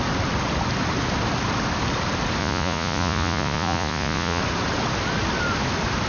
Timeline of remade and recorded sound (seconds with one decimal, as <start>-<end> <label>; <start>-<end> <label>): 0.0-2.4 recorded; 2.4-4.4 remade; 4.4-6.1 recorded